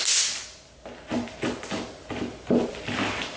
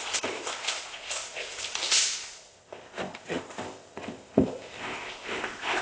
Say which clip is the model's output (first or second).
second